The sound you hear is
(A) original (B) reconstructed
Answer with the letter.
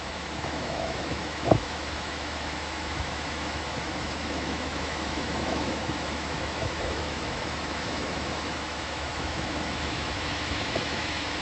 B